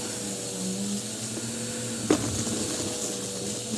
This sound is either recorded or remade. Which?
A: recorded